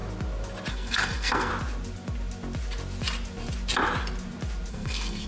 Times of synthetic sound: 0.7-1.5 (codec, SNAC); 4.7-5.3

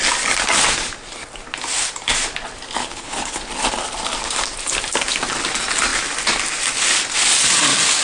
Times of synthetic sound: 2.8-3.5 (codec, HILCodec)

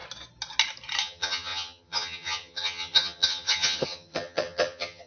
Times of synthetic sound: 1.0-5.1 (vocoder, HiFi-GAN)

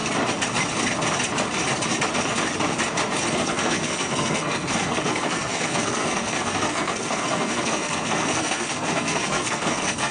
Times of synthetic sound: 3.3-10.1 (codec, SNAC)